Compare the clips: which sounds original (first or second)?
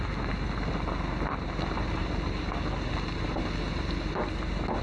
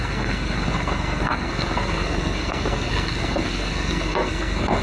first